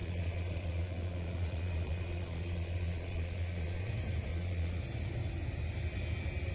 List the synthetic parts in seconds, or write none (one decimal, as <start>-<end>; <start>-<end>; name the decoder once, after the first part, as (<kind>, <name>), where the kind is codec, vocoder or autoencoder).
0.0-3.9 (vocoder, Vocos); 4.3-4.8